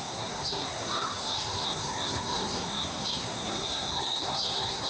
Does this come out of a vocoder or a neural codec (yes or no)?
yes